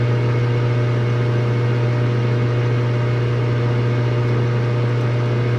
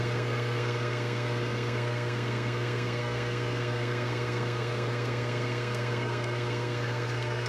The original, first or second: first